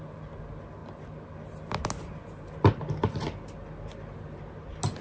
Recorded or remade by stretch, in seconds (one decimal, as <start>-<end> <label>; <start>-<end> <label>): 0.0-5.0 recorded